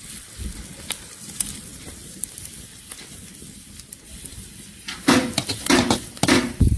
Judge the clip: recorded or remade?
remade